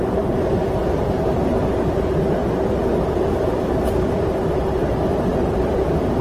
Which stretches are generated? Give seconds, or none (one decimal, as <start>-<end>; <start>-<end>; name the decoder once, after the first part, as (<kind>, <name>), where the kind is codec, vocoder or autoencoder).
none